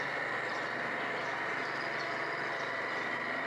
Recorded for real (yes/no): yes